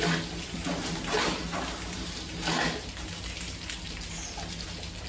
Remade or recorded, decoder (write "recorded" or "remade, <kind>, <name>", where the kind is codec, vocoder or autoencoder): recorded